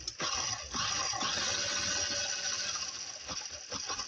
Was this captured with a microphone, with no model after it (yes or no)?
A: yes